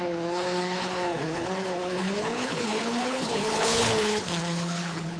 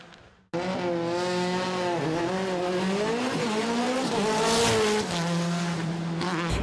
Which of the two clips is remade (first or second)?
first